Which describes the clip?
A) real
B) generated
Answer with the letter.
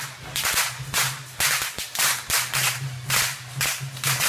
A